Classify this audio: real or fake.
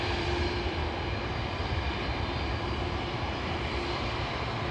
fake